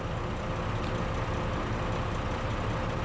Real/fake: real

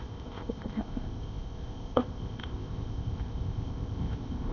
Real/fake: fake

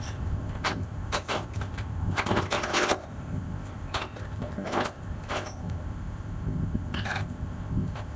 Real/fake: fake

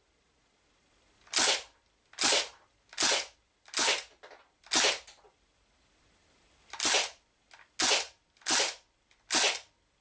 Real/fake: real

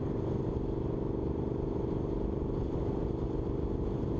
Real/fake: real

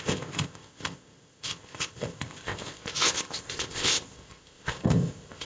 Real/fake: fake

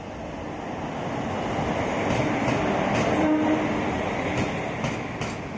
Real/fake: real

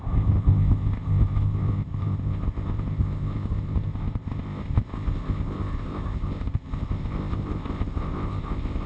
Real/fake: fake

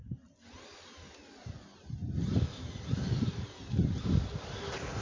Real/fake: real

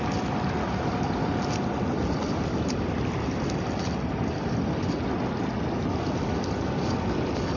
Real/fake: real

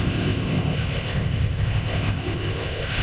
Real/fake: fake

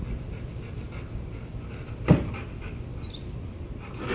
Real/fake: real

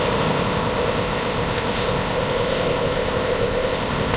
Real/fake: fake